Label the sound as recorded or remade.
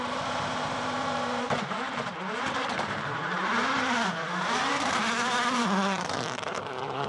remade